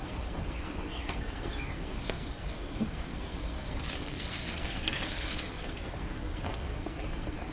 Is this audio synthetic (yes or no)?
yes